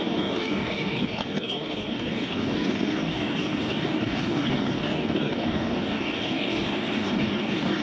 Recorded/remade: remade